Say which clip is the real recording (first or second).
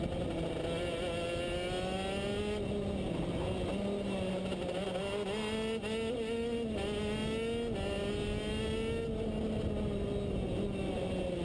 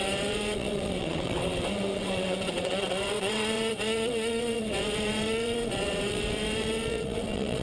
first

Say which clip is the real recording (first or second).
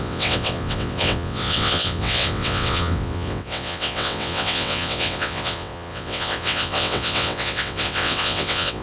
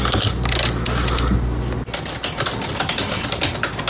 second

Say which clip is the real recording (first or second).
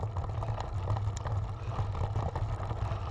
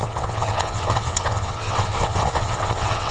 first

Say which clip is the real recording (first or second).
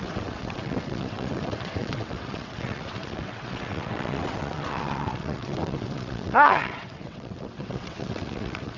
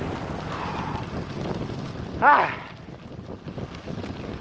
second